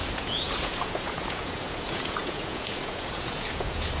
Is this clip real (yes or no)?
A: no